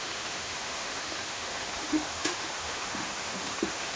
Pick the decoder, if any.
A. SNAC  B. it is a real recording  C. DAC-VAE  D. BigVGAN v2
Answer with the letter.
C